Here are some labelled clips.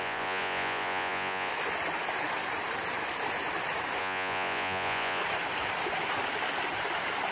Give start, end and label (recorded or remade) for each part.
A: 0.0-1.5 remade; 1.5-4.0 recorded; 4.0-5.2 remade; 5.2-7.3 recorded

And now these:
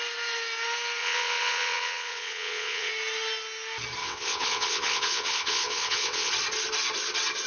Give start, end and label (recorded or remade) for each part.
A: 0.0-1.0 recorded; 1.0-2.9 remade; 2.9-4.0 recorded; 4.0-6.3 remade; 6.3-7.5 recorded

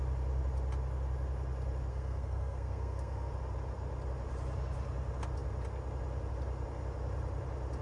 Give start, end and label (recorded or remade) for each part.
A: 0.0-1.9 recorded; 1.9-3.3 remade; 3.3-7.8 recorded